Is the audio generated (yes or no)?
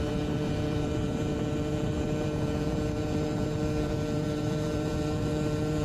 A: yes